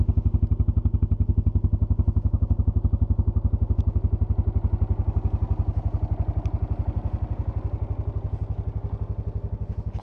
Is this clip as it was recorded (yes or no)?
yes